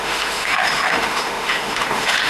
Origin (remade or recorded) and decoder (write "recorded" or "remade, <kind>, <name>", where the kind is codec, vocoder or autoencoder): remade, autoencoder, DAC-VAE